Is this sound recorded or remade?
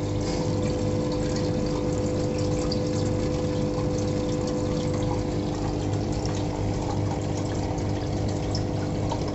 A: recorded